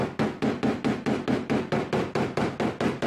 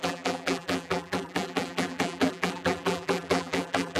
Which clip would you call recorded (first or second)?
first